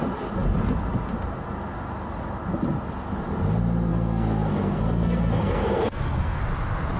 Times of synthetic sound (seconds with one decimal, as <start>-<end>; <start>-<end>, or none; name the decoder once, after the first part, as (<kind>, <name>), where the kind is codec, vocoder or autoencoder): 3.9-6.4 (codec, SNAC)